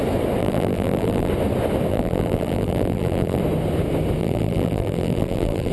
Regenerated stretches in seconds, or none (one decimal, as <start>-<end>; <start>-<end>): 0.4-1.3; 1.9-3.4; 4.2-5.7